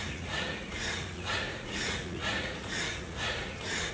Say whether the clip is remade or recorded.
remade